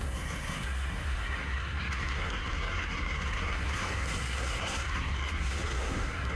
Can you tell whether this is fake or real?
fake